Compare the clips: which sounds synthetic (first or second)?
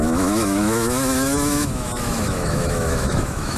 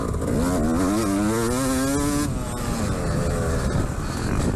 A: first